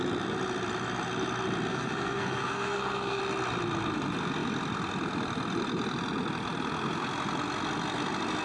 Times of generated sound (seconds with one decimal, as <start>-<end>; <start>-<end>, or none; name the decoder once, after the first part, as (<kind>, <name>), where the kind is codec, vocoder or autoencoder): 1.7-3.2 (codec, SNAC)